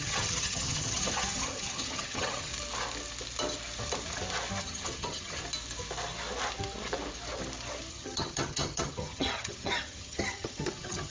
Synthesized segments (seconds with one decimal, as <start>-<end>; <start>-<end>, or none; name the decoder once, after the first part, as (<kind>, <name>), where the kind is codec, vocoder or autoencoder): 0.0-2.5 (vocoder, HiFi-GAN); 4.6-5.4; 7.9-11.1